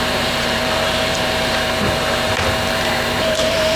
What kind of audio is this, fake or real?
fake